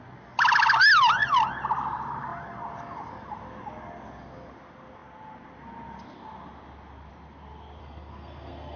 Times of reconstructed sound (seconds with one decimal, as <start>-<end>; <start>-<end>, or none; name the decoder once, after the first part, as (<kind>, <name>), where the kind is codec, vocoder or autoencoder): 7.8-8.8 (codec, SNAC)